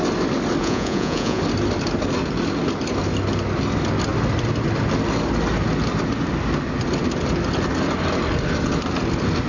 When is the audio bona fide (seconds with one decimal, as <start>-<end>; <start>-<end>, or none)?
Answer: 0.0-0.6; 1.4-9.5